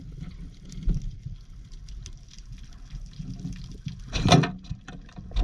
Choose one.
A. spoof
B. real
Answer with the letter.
B